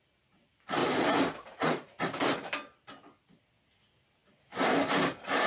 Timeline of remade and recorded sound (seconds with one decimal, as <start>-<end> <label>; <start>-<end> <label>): 0.0-0.8 recorded; 0.8-2.0 remade; 2.0-5.5 recorded